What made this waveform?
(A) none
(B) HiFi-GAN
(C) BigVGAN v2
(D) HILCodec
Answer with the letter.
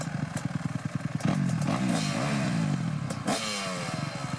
A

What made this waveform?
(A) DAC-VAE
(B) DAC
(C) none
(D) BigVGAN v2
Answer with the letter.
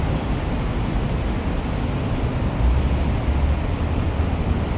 C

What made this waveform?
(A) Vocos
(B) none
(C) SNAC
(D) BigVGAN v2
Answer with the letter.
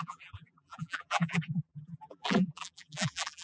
D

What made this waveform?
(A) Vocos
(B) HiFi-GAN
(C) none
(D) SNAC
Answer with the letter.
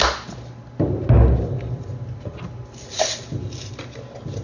C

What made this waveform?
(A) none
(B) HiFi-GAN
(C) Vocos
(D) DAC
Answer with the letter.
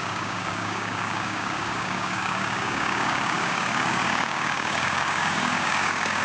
D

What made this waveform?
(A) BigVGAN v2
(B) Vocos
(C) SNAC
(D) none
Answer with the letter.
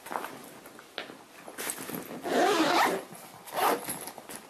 D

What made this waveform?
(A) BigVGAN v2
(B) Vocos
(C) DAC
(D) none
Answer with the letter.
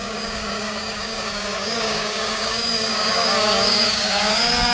C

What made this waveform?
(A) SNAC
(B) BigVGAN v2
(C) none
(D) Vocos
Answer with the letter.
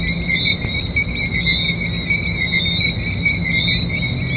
C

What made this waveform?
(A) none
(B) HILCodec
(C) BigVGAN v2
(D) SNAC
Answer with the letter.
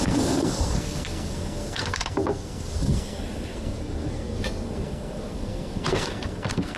D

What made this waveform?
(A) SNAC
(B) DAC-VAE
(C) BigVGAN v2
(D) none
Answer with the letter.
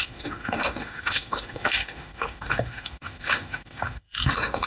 B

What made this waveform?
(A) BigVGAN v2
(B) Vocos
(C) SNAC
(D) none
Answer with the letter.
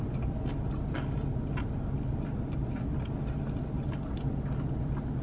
D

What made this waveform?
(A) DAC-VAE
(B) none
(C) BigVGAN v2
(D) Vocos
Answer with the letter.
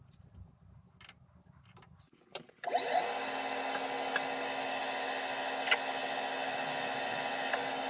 B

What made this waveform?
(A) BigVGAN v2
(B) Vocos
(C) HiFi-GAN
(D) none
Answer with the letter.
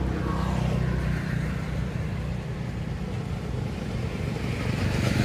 D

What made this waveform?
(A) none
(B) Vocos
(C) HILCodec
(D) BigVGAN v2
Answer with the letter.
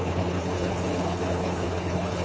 C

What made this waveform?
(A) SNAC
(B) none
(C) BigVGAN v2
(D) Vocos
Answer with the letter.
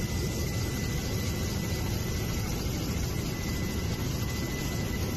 B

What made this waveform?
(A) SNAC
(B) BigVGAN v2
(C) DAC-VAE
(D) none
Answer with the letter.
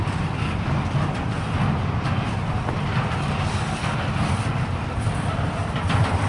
B